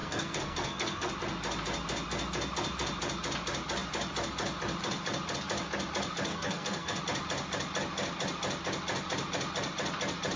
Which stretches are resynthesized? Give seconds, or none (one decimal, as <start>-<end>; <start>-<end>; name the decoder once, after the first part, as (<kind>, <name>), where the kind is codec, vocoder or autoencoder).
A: 0.0-1.1 (codec, SNAC); 6.3-7.0